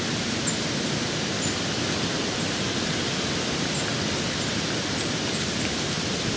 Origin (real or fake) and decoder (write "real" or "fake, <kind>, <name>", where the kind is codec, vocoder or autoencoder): real